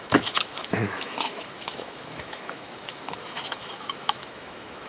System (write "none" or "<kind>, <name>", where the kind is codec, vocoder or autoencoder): autoencoder, DAC-VAE